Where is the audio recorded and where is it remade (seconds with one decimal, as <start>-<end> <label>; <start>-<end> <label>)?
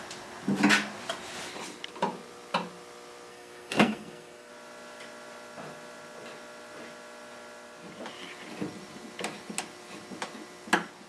0.0-3.3 recorded; 3.3-4.5 remade; 4.5-11.1 recorded